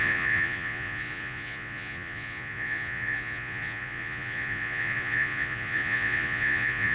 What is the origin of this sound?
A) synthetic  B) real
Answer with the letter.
A